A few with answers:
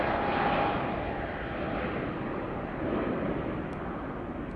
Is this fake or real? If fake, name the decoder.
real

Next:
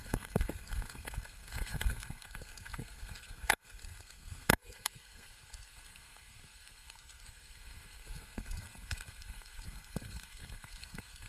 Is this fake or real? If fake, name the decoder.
fake, codec, SNAC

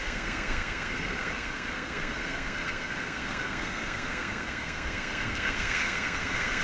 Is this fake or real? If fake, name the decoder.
fake, codec, SNAC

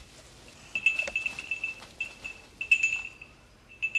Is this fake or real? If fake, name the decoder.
real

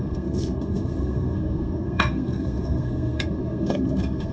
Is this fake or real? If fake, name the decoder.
fake, codec, SNAC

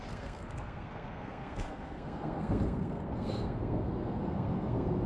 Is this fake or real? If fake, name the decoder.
fake, codec, SNAC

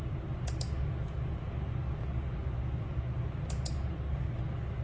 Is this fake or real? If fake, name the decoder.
real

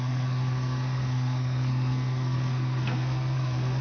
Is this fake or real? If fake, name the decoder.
fake, codec, SNAC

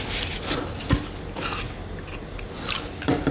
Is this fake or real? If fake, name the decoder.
real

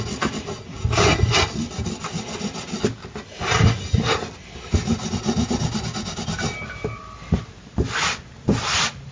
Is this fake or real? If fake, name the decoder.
real